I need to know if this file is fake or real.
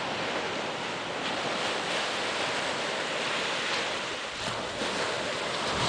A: real